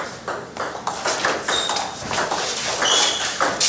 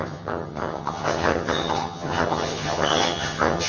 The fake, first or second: second